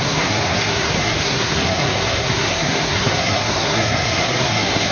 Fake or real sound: fake